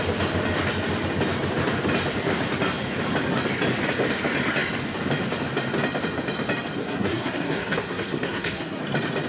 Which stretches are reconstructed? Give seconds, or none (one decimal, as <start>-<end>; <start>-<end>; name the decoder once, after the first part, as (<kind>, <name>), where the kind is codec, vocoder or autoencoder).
6.8-8.8 (codec, SNAC)